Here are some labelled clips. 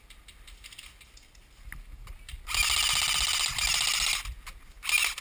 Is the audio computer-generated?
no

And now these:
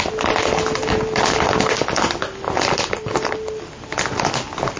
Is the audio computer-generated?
no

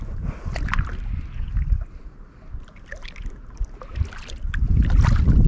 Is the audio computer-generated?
no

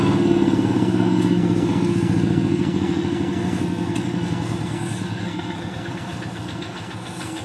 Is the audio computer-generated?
yes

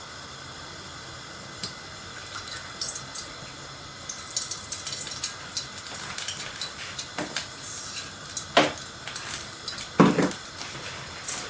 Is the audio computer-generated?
no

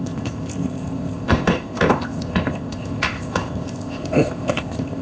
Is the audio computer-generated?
yes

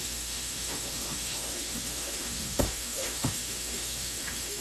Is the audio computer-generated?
yes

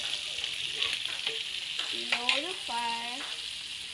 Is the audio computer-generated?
no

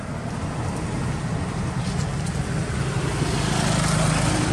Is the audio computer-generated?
no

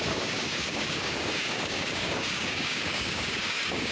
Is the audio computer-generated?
yes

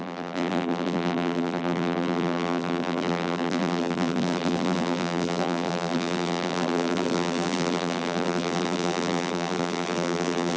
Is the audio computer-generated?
yes